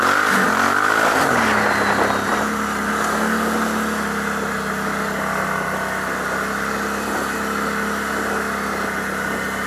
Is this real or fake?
real